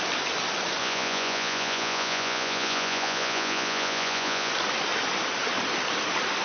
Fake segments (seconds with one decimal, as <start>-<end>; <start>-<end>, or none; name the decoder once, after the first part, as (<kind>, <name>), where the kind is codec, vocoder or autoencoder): 0.8-4.5 (vocoder, Vocos)